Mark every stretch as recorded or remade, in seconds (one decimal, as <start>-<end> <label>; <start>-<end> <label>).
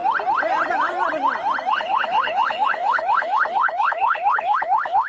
0.0-1.7 recorded; 1.7-5.1 remade